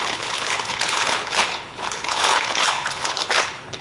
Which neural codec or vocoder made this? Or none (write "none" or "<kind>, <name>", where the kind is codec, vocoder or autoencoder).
codec, HILCodec